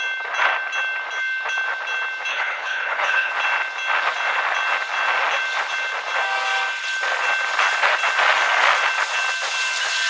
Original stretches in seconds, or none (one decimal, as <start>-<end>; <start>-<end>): 0.0-2.3; 3.3-10.1